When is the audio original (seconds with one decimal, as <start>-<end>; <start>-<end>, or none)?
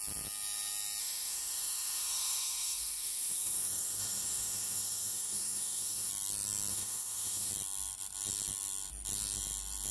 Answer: 0.0-1.0; 6.1-6.7; 7.5-9.9